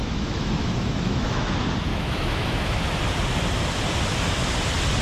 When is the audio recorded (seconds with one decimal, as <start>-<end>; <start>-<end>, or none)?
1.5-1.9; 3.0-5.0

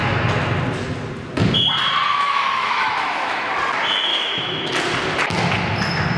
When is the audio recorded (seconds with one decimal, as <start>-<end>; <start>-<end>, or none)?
0.0-2.1; 3.5-4.1; 4.7-6.2

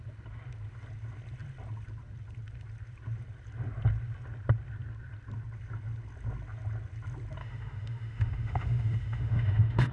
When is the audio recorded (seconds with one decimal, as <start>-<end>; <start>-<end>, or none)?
0.0-7.4

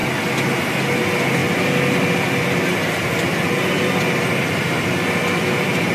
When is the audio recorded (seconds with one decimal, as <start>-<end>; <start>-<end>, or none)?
0.0-5.9